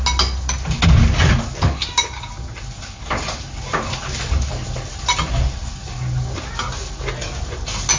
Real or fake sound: real